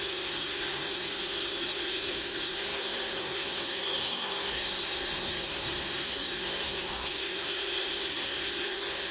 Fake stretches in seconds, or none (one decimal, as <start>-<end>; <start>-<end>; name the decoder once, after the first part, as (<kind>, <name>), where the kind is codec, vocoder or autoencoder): 0.0-9.1 (codec, SNAC)